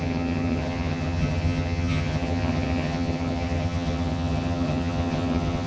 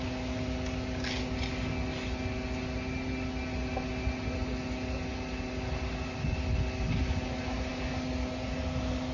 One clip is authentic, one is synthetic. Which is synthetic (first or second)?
first